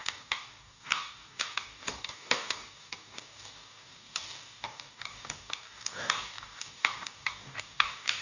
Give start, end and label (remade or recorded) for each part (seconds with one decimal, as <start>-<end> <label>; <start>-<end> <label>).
0.0-8.2 remade